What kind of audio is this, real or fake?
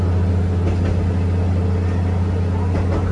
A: real